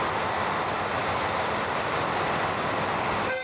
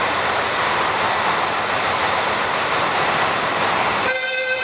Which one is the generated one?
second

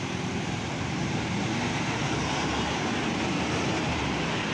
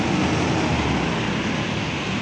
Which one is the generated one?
first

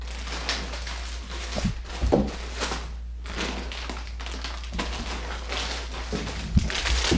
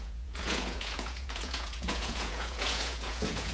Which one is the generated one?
second